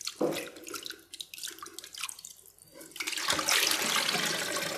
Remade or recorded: recorded